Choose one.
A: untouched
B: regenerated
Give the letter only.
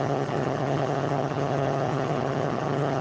B